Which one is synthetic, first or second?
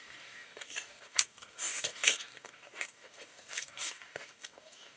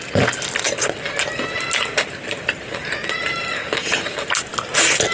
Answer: first